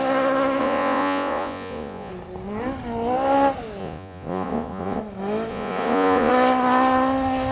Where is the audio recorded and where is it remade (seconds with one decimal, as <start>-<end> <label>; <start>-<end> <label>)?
0.0-0.6 recorded; 0.6-2.1 remade; 2.1-3.8 recorded; 3.8-5.0 remade; 5.0-5.5 recorded; 5.5-6.3 remade; 6.3-7.5 recorded